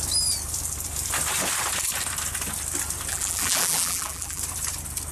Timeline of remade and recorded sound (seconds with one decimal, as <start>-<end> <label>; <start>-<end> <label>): 0.0-3.1 recorded; 3.1-4.4 remade; 4.4-5.1 recorded